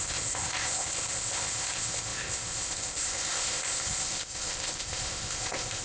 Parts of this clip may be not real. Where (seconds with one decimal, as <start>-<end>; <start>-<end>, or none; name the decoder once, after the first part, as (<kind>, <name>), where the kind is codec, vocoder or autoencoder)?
0.0-5.8 (codec, ZipCodec)